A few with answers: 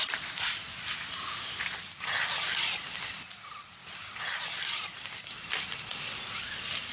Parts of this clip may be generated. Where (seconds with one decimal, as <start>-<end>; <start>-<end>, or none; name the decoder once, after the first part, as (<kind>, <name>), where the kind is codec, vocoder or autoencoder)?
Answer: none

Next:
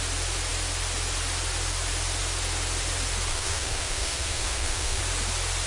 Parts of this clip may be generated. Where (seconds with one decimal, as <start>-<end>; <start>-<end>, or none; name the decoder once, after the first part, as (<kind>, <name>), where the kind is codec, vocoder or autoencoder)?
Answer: 3.3-5.0 (codec, SNAC)

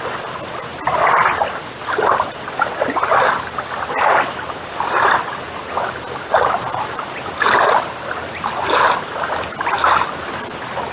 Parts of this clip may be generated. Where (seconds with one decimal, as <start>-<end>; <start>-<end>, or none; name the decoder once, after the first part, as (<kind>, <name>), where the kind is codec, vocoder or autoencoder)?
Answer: none

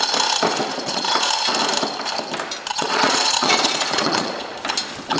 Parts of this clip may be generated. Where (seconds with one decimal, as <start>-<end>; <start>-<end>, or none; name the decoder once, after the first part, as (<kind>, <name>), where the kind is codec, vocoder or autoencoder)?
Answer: 0.7-1.3 (vocoder, Vocos); 2.7-4.6

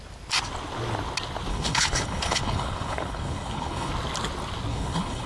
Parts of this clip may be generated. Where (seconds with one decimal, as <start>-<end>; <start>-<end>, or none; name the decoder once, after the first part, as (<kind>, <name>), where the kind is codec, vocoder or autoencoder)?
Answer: 1.5-3.9 (codec, HILCodec); 4.7-5.3

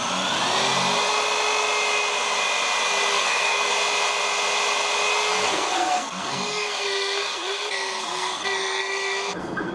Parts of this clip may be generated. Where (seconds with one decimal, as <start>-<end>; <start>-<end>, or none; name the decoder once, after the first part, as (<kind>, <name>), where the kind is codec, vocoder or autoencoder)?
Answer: 3.1-3.7 (codec, SNAC); 5.3-9.7